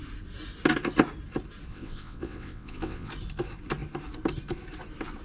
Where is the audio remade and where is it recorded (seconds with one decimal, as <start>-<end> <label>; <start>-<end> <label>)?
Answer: 0.0-1.7 recorded; 1.7-3.1 remade; 3.1-5.2 recorded